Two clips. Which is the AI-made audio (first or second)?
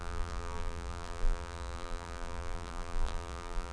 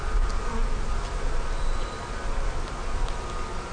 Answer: first